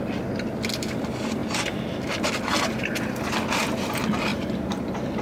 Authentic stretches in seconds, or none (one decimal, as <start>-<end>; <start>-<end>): 0.0-5.2